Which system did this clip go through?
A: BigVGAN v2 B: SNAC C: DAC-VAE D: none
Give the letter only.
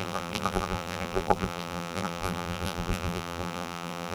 A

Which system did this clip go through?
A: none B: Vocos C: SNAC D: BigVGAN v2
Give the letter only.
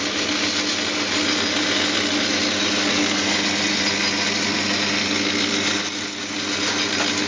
A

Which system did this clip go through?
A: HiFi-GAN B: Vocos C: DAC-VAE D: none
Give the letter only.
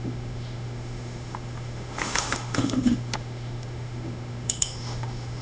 C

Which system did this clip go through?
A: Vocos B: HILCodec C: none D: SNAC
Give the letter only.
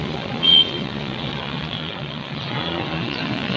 A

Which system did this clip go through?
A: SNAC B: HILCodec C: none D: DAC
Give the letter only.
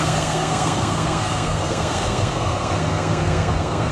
A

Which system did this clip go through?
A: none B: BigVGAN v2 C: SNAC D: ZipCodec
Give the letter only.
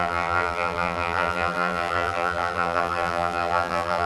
B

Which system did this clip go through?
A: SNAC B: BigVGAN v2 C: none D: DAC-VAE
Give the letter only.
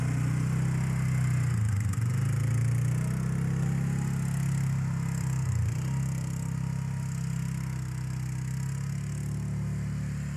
C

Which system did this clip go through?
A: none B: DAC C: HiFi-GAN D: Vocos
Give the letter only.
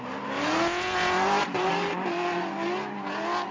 A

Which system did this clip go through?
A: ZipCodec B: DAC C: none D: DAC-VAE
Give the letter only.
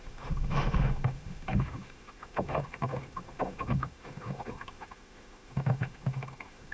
D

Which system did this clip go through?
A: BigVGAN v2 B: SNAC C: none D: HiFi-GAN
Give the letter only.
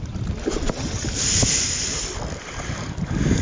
C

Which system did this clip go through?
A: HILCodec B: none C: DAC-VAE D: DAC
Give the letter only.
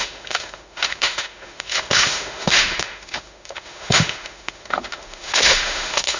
C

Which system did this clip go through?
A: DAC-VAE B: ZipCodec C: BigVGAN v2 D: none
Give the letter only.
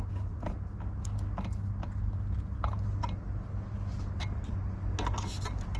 D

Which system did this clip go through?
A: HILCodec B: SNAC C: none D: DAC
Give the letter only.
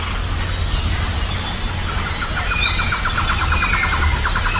C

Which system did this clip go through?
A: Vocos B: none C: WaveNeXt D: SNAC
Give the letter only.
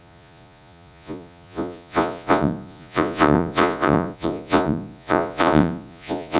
A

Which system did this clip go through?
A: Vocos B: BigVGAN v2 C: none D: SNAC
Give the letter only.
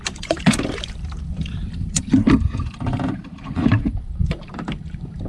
B